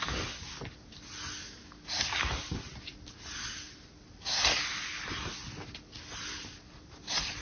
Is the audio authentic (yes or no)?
yes